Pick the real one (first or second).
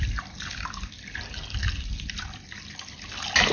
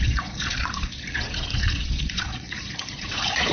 first